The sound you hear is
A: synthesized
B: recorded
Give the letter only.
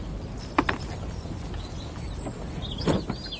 B